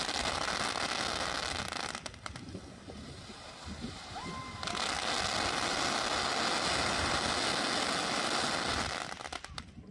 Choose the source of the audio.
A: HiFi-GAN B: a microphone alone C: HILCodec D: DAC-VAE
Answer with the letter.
B